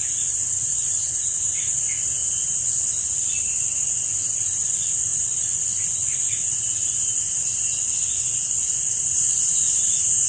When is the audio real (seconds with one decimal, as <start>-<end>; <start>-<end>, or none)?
0.0-0.7; 1.2-10.3